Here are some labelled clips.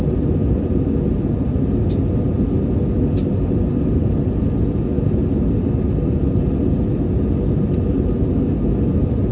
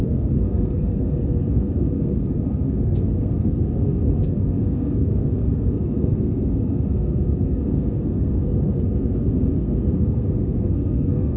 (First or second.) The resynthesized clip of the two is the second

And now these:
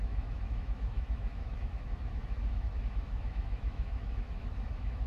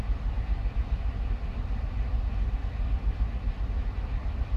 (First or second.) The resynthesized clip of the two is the first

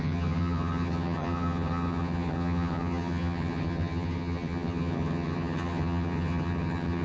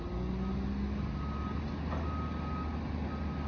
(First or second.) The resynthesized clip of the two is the first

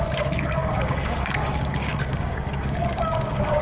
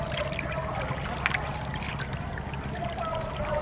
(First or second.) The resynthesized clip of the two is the first